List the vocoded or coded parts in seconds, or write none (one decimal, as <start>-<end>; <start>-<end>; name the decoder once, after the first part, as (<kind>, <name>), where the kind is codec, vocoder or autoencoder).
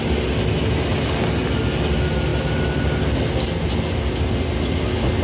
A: none